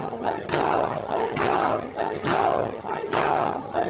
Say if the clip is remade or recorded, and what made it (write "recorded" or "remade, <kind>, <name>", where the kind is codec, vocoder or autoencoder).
remade, vocoder, HiFi-GAN